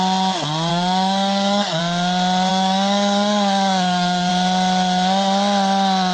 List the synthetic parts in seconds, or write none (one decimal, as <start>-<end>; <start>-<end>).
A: 0.7-1.8; 2.5-4.3